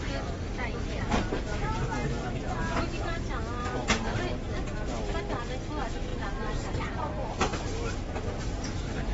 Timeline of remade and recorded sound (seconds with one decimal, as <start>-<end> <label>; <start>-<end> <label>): 0.0-4.1 recorded; 4.1-5.2 remade; 5.2-9.1 recorded

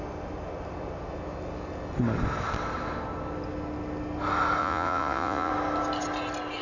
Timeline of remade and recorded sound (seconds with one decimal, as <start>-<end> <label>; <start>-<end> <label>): 0.0-4.6 recorded; 4.6-5.5 remade; 5.5-6.6 recorded

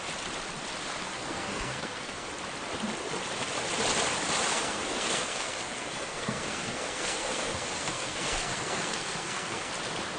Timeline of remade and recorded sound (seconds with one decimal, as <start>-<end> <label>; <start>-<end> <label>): 0.0-1.1 recorded; 1.1-2.3 remade; 2.3-4.5 recorded; 4.5-9.7 remade; 9.7-10.2 recorded

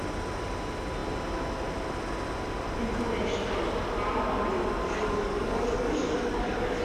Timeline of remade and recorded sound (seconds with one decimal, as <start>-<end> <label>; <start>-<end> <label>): 0.0-4.8 recorded; 4.8-6.8 remade